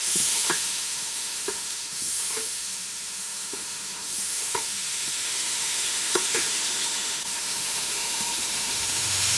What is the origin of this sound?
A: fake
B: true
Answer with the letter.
A